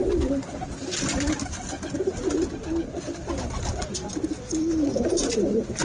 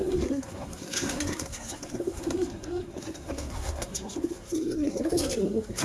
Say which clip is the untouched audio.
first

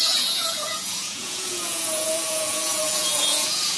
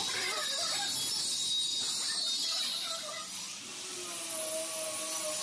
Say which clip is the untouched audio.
second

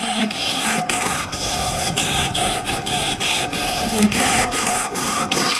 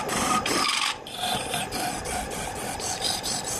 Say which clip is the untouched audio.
second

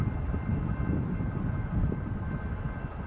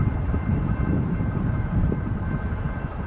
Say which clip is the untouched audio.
first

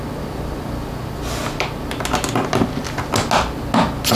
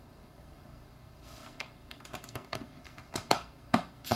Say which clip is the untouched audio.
first